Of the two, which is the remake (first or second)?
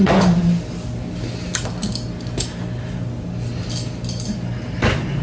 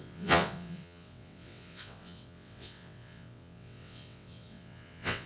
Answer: second